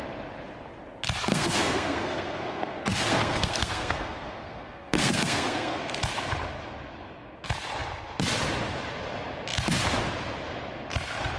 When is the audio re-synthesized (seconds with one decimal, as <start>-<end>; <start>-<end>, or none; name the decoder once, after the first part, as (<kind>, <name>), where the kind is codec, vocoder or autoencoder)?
1.3-5.8 (codec, SNAC)